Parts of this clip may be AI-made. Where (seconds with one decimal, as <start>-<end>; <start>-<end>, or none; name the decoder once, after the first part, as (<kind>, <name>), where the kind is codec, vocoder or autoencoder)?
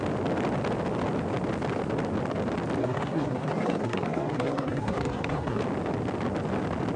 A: 2.8-5.6 (codec, SNAC)